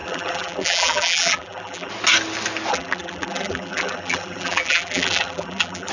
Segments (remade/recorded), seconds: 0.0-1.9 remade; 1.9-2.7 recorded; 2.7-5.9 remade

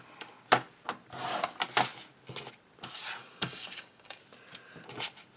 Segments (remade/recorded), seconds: 0.0-3.2 recorded; 3.2-4.2 remade; 4.2-5.4 recorded

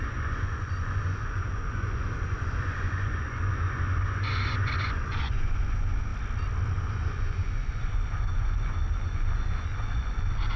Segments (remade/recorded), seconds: 0.0-6.1 remade; 6.1-6.7 recorded; 6.7-10.6 remade

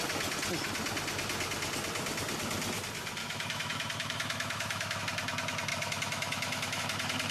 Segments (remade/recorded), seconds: 0.0-3.2 recorded; 3.2-5.0 remade; 5.0-5.7 recorded; 5.7-6.8 remade; 6.8-7.3 recorded

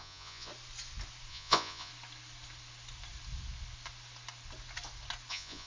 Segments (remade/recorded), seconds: 0.0-0.5 remade; 0.5-1.3 recorded; 1.3-1.9 remade; 1.9-5.3 recorded; 5.3-5.7 remade

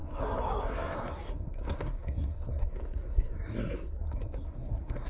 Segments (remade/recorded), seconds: 0.0-5.1 remade

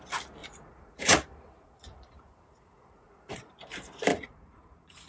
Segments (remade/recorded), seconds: 0.0-0.4 recorded; 0.4-3.5 remade; 3.5-4.1 recorded; 4.1-5.1 remade